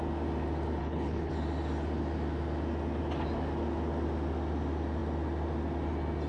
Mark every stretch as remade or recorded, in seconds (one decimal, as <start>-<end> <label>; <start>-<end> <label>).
0.0-0.8 recorded; 0.8-1.3 remade; 1.3-6.3 recorded